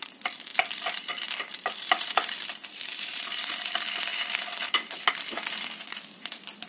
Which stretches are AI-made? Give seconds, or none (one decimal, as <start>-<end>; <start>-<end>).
0.5-3.5